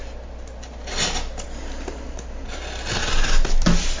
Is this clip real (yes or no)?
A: yes